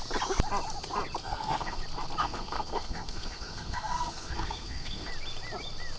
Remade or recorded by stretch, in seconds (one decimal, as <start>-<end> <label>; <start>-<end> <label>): 0.0-1.2 recorded; 1.2-1.8 remade; 1.8-2.2 recorded; 2.2-5.1 remade; 5.1-6.0 recorded

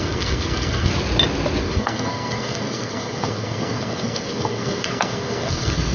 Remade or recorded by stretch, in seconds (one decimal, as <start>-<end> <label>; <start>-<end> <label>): 0.0-0.9 remade; 0.9-1.6 recorded; 1.6-5.9 remade

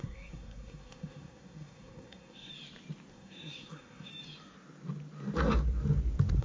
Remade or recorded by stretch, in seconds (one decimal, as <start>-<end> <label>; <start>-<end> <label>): 0.0-2.5 remade; 2.5-3.1 recorded; 3.1-4.1 remade; 4.1-6.4 recorded

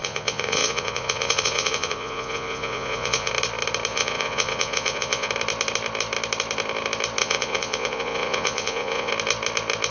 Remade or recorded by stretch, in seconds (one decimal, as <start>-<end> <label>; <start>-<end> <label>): 0.0-3.3 remade; 3.3-3.9 recorded; 3.9-5.3 remade; 5.3-7.2 recorded; 7.2-9.1 remade; 9.1-9.9 recorded

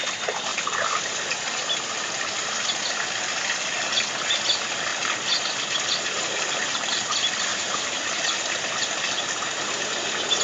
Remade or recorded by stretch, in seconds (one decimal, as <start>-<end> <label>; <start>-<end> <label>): 0.0-0.5 recorded; 0.5-1.1 remade; 1.1-7.5 recorded; 7.5-8.4 remade; 8.4-10.4 recorded

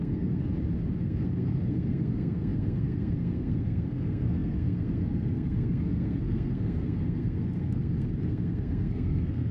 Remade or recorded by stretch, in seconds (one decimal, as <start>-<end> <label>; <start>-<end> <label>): 0.0-0.5 remade; 0.5-1.0 recorded; 1.0-9.5 remade